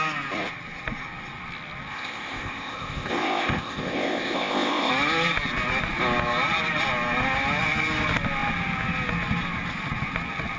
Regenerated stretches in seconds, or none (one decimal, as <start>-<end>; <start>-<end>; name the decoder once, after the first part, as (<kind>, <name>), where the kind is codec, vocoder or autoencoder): 1.9-4.9 (codec, ZipCodec)